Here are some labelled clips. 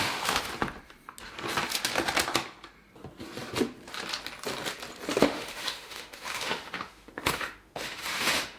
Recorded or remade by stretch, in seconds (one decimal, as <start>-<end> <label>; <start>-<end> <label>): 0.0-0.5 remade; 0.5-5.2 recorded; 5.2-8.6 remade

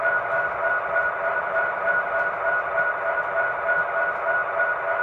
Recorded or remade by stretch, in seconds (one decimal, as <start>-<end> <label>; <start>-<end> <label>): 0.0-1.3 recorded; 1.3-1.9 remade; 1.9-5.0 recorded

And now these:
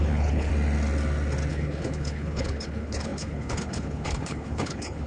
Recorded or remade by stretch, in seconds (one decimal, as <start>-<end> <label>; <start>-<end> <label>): 0.0-0.5 remade; 0.5-1.5 recorded; 1.5-5.1 remade

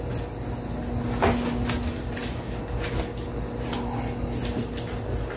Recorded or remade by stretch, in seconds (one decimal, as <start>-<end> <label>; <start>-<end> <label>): 0.0-5.4 recorded

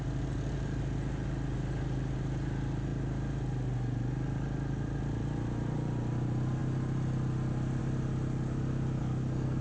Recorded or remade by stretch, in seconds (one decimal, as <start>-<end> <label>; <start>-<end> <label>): 0.0-9.0 recorded; 9.0-9.6 remade

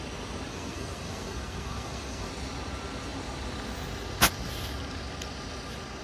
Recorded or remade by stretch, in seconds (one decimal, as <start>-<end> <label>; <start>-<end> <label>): 0.0-0.5 recorded; 0.5-2.3 remade; 2.3-6.0 recorded

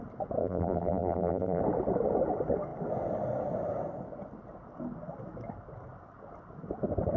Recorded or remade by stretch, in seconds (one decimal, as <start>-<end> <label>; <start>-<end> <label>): 0.0-0.4 recorded; 0.4-1.6 remade; 1.6-7.2 recorded